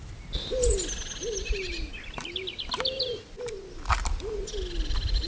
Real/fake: real